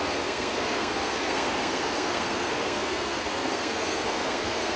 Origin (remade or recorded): remade